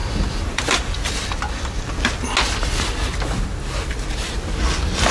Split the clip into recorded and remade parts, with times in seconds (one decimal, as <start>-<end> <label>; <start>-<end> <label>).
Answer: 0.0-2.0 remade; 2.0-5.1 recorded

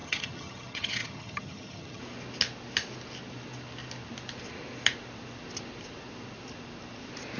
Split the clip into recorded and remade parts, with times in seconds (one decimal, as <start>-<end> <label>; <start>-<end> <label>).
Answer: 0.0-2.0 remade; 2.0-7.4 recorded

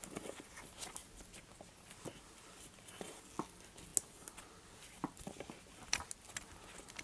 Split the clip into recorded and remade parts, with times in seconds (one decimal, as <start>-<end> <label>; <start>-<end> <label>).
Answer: 0.0-7.0 recorded

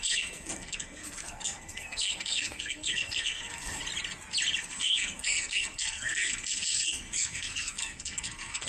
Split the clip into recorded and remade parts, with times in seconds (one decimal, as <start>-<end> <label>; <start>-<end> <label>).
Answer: 0.0-3.8 remade; 3.8-4.6 recorded; 4.6-8.7 remade